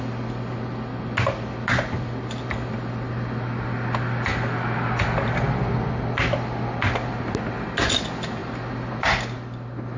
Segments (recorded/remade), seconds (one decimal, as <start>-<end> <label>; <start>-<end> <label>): 0.0-10.0 recorded